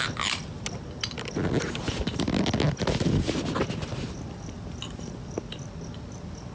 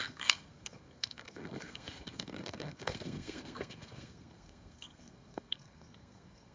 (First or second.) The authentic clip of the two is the first